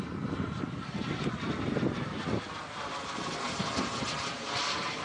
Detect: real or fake fake